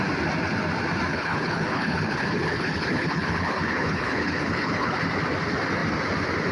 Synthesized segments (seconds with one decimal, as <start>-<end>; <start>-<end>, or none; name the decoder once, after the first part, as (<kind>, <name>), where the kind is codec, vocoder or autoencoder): 1.1-5.0 (codec, HILCodec)